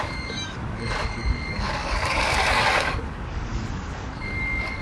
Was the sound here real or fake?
fake